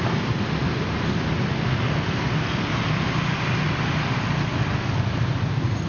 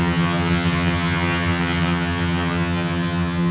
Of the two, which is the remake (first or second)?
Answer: second